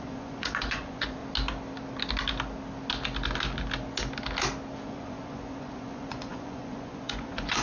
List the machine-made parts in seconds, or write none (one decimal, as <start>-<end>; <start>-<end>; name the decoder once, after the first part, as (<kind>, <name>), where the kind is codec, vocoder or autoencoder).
0.0-1.2 (vocoder, Vocos); 4.8-7.6